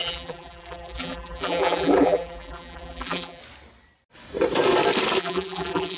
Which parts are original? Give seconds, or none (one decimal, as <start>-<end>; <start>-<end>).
3.4-5.2